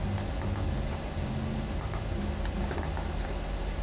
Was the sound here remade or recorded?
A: recorded